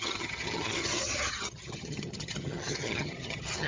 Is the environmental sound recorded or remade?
remade